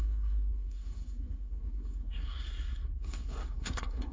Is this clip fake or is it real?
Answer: fake